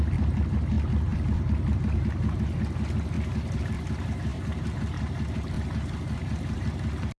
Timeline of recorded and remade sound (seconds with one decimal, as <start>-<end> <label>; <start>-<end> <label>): 0.0-7.2 recorded